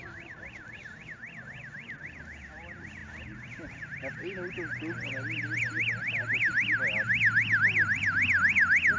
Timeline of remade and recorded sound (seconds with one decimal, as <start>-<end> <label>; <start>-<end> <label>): 0.0-9.0 recorded